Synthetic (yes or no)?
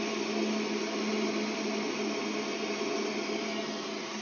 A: no